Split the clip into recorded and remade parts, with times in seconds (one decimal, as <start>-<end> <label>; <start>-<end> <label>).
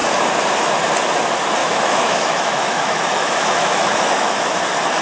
0.0-1.6 recorded; 1.6-4.6 remade; 4.6-5.0 recorded